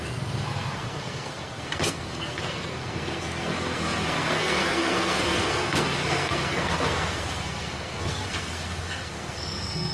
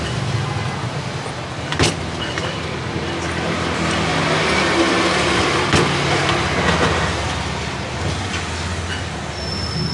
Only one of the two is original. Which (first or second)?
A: second